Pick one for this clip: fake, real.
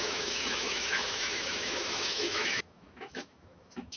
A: fake